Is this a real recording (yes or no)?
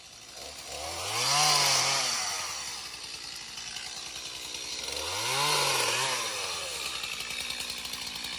yes